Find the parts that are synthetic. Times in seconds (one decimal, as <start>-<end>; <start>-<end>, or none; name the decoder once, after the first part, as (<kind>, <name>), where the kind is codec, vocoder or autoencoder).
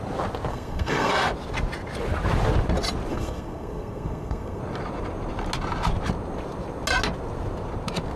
0.5-1.1 (codec, SNAC); 3.1-4.6